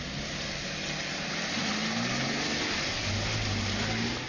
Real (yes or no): yes